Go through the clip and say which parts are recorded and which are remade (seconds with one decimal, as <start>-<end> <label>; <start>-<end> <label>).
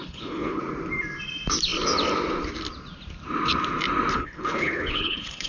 0.0-0.6 remade; 0.6-4.1 recorded; 4.1-5.5 remade